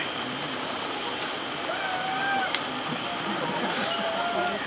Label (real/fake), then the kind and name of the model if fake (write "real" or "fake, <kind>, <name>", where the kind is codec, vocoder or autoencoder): real